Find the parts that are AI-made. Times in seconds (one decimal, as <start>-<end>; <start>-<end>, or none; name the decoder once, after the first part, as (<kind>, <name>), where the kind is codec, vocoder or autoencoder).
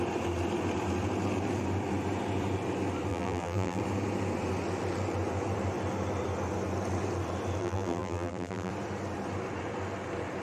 3.1-3.8 (vocoder, BigVGAN v2); 7.6-8.7